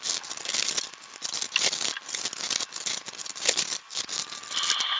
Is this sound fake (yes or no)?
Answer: no